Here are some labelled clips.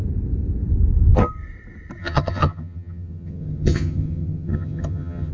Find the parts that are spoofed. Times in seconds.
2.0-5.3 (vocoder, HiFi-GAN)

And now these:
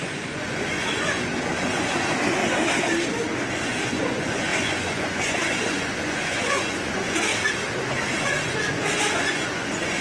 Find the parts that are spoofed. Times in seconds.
0.0-2.4 (vocoder, Vocos); 3.5-7.3; 8.2-10.0

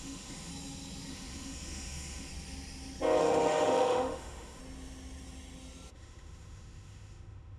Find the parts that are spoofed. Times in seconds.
0.0-0.5 (autoencoder, DAC-VAE); 1.1-2.3; 3.2-4.6; 5.9-7.6

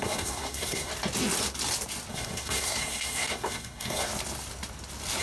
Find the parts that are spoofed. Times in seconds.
0.0-0.9 (codec, SNAC); 2.1-4.1

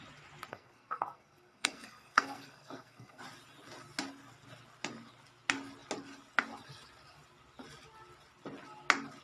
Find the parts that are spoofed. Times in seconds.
0.5-3.2 (codec, SNAC)

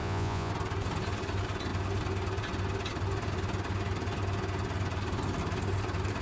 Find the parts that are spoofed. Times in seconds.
0.0-0.5 (vocoder, Vocos)